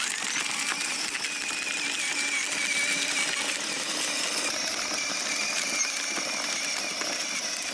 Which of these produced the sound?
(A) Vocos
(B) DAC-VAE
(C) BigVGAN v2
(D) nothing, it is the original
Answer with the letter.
D